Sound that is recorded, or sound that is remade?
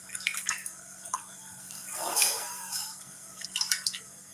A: remade